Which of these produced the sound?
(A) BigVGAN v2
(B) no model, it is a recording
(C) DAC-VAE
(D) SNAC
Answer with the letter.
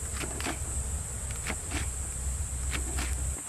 B